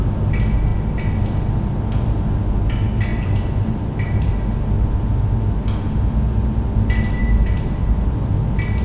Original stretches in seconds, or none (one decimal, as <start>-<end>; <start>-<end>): 0.0-3.1; 4.3-7.2; 8.0-8.8